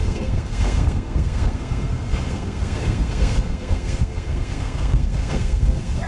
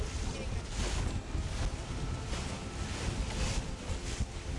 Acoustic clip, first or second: second